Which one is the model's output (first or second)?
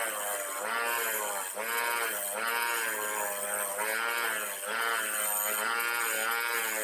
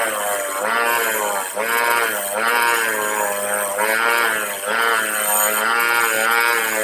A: second